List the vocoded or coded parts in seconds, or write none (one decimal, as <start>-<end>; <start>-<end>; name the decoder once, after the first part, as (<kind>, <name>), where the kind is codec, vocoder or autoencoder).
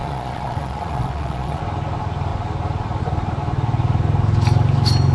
0.0-1.6 (vocoder, Vocos)